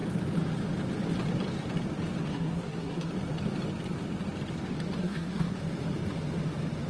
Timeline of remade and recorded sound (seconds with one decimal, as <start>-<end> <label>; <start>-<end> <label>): 0.0-2.3 recorded; 2.3-3.1 remade; 3.1-5.0 recorded; 5.0-5.6 remade; 5.6-6.9 recorded